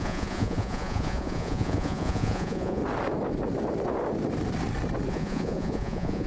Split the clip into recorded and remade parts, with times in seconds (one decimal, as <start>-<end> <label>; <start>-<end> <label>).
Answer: 0.0-2.8 remade; 2.8-5.1 recorded; 5.1-6.3 remade